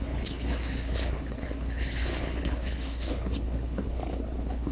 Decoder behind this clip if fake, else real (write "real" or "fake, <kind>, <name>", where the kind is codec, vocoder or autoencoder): fake, codec, HILCodec